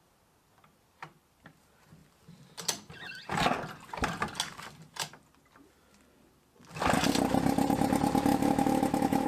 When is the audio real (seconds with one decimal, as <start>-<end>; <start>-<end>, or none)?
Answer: 0.0-8.3